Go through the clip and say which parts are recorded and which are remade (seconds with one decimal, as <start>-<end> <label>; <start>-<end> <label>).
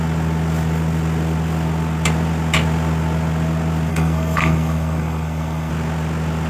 0.0-3.9 recorded; 3.9-5.7 remade; 5.7-6.5 recorded